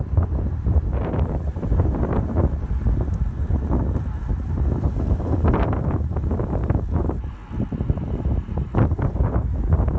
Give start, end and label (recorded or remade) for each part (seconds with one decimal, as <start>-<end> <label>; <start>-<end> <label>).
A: 0.0-2.8 remade; 2.8-4.4 recorded; 4.4-7.4 remade; 7.4-8.0 recorded; 8.0-10.0 remade